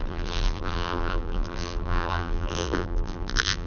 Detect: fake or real fake